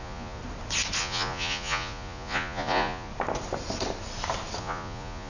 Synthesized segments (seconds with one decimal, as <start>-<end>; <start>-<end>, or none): 0.0-0.4; 1.0-3.1; 4.6-5.3